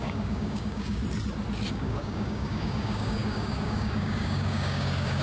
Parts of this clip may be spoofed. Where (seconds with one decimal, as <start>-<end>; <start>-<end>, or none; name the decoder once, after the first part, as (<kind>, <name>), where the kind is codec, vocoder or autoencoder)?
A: 0.0-1.0 (codec, DAC); 1.7-5.2